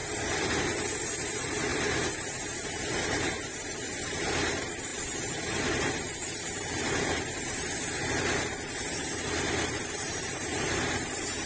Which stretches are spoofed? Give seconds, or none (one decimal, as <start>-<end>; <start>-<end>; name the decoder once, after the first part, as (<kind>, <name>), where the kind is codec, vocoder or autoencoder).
0.0-11.5 (vocoder, BigVGAN v2)